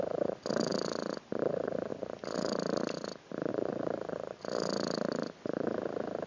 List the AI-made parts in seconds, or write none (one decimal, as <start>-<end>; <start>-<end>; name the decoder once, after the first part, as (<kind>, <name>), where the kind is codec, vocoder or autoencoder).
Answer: none